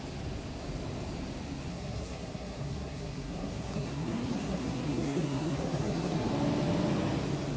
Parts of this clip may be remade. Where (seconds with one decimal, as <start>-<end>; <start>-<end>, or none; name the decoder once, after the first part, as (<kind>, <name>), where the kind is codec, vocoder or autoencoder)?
1.7-6.3 (codec, SNAC)